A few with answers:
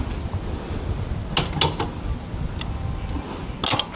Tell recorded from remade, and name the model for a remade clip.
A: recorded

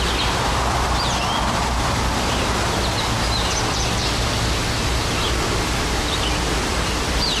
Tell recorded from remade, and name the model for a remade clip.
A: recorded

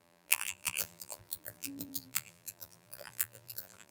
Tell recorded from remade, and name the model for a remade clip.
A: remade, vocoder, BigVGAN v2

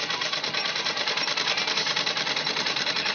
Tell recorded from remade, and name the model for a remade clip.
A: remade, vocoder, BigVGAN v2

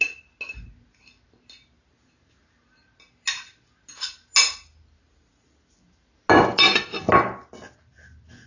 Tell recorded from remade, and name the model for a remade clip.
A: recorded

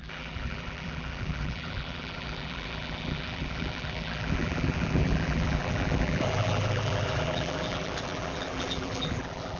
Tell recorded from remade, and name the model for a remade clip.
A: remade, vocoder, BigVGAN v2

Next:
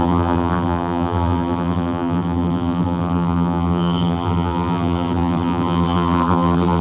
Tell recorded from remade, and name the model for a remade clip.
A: remade, vocoder, BigVGAN v2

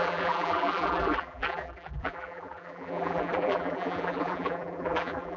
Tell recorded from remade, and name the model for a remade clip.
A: remade, vocoder, BigVGAN v2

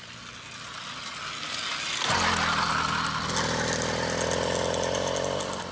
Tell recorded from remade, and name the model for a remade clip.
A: recorded